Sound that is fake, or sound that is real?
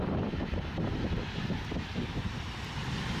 real